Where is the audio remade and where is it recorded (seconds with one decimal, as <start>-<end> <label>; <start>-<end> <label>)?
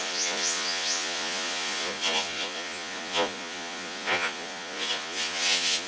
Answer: 0.0-5.9 remade